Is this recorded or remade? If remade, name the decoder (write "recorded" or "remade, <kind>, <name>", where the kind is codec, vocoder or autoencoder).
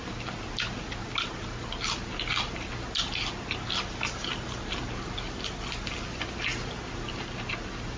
recorded